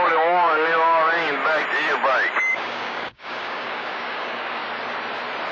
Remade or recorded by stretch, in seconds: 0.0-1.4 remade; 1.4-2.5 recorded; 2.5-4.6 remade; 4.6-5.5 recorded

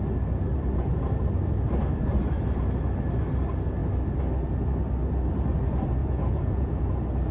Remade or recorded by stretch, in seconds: 0.0-6.0 recorded; 6.0-6.8 remade; 6.8-7.3 recorded

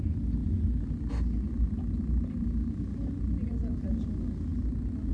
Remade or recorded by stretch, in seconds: 0.0-5.1 recorded

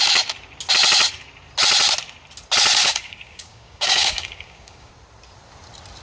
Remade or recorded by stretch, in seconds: 0.0-2.8 recorded; 2.8-4.9 remade; 4.9-6.0 recorded

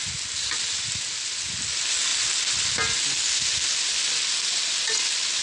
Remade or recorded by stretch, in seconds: 0.0-5.4 recorded

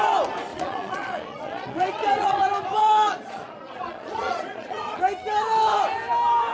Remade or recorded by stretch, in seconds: 0.0-0.5 recorded; 0.5-2.4 remade; 2.4-2.8 recorded; 2.8-5.0 remade; 5.0-6.5 recorded

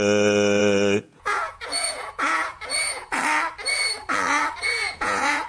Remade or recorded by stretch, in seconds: 0.0-3.2 remade; 3.2-4.6 recorded; 4.6-5.5 remade

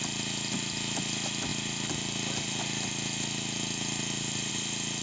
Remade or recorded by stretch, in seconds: 0.0-5.0 recorded